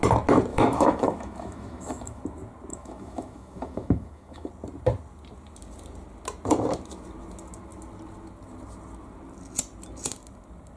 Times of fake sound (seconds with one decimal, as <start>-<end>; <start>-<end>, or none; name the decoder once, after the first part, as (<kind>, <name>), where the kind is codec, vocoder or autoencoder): 0.5-2.2 (autoencoder, DAC-VAE); 2.7-4.5